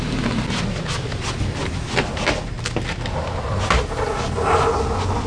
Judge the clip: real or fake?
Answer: real